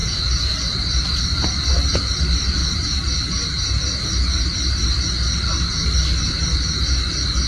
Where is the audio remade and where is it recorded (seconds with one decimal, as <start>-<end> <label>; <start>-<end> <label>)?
0.0-2.6 recorded; 2.6-5.1 remade; 5.1-7.5 recorded